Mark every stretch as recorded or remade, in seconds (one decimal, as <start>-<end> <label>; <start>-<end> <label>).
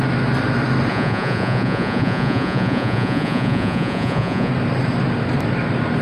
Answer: 0.0-0.9 recorded; 0.9-4.5 remade; 4.5-6.0 recorded